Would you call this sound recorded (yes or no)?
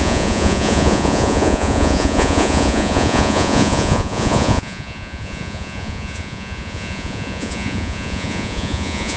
no